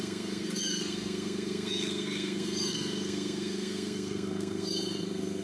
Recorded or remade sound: remade